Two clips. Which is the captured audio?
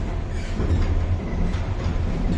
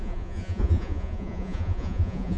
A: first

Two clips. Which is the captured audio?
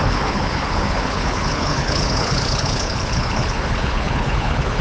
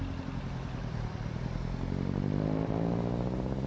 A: second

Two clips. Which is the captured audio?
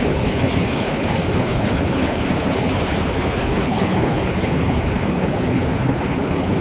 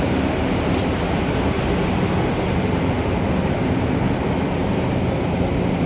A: second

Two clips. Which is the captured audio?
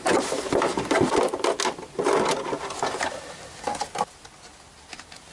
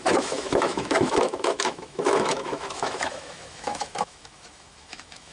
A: first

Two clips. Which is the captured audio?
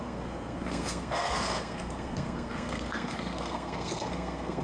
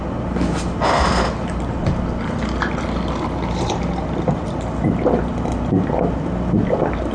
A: second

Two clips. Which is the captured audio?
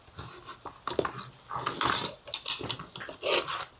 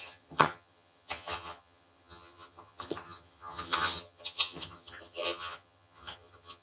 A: first